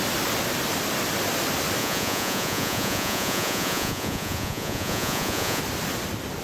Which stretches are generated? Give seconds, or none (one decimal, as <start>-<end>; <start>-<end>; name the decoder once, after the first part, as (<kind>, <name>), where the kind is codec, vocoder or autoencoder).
1.8-5.6 (vocoder, Vocos)